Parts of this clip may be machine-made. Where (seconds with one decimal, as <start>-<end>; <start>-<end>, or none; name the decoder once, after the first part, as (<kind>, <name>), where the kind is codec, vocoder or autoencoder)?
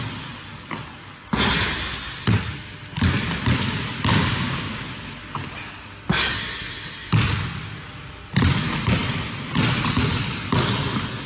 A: 4.1-4.8 (codec, DAC)